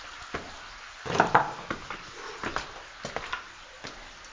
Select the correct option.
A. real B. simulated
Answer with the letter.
A